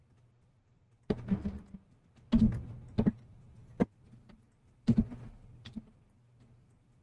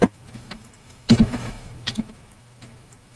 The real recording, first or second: first